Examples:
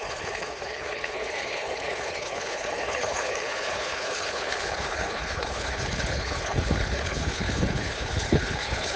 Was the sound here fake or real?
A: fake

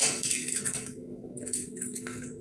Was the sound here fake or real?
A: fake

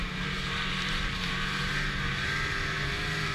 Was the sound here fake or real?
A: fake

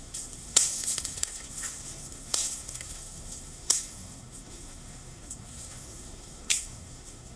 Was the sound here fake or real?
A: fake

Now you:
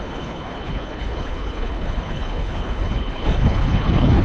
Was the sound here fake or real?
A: fake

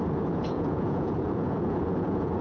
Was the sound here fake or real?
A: fake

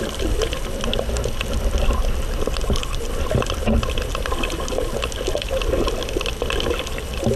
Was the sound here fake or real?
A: real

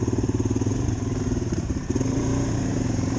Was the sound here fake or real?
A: fake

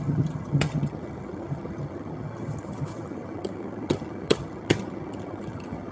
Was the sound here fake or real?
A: fake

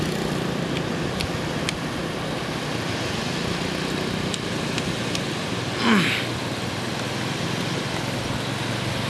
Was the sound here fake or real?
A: real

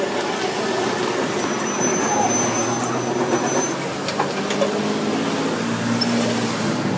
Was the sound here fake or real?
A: real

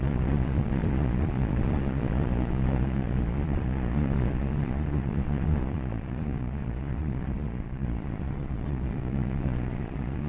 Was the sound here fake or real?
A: fake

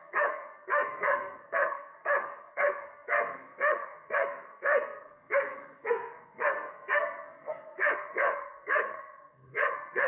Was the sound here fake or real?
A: fake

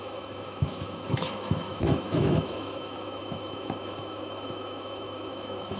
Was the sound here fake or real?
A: fake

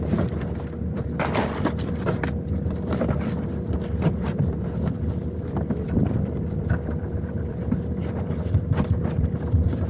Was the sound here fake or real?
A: fake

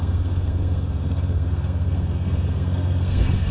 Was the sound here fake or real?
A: fake